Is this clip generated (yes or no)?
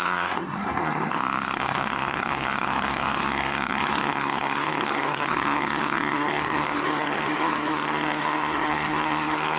yes